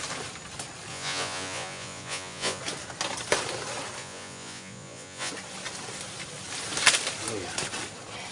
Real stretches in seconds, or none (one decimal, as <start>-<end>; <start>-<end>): 0.0-0.9; 2.6-4.0; 5.3-8.3

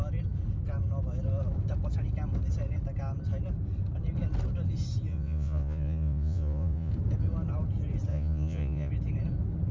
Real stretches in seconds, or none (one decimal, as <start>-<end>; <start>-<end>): 0.0-5.1; 6.9-8.1; 8.9-9.7